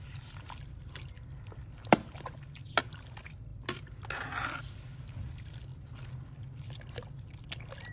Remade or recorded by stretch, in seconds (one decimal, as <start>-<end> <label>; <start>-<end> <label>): 0.0-7.9 recorded